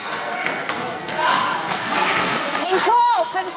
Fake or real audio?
fake